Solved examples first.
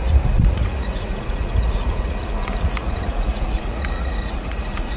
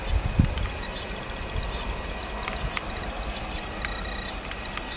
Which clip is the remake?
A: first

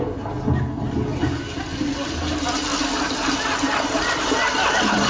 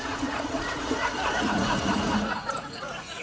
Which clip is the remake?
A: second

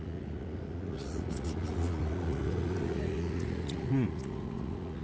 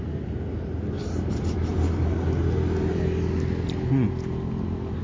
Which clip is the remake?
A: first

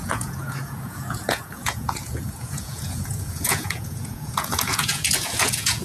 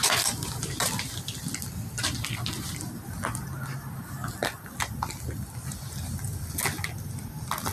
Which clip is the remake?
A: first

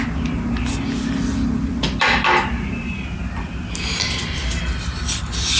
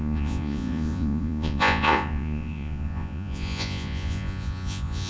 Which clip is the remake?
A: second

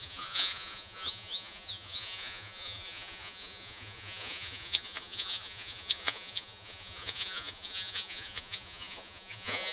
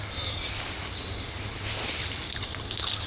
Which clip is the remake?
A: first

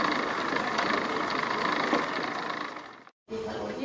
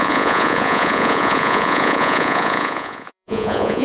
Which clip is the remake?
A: second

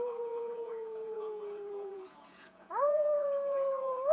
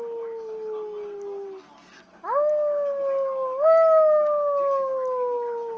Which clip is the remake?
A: first